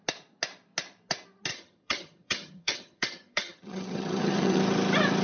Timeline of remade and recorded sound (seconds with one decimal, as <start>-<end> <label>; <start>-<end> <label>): 0.0-1.5 recorded; 1.5-4.6 remade; 4.6-5.2 recorded